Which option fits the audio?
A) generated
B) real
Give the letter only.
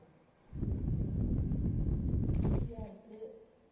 B